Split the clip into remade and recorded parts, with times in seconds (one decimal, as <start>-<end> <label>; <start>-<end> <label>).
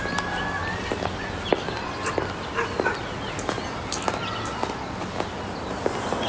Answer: 0.0-6.3 recorded